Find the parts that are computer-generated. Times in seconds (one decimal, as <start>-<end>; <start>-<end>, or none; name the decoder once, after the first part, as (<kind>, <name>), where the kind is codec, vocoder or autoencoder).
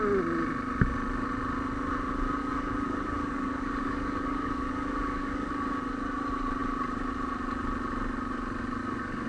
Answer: 2.4-5.5 (codec, DAC); 8.8-9.3